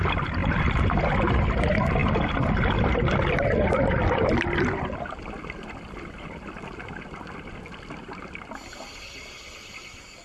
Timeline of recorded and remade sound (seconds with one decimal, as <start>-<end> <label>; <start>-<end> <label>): 0.0-10.2 recorded